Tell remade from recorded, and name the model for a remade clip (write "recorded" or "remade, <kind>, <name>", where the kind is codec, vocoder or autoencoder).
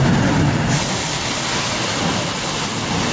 recorded